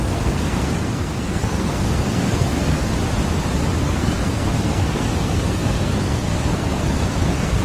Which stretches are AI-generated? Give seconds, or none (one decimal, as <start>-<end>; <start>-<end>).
0.0-2.9; 3.8-7.6